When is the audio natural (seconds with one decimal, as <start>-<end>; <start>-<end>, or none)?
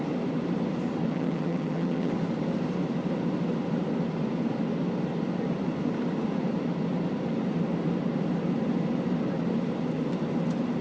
0.0-1.1; 2.1-10.8